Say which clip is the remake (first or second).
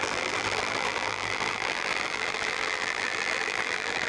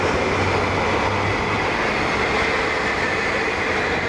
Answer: first